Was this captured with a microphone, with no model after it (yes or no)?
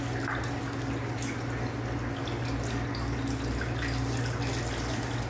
yes